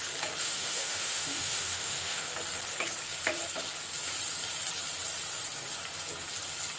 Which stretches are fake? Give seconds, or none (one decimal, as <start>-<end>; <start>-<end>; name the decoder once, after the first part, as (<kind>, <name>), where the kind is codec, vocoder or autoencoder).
0.4-2.3 (autoencoder, DAC-VAE)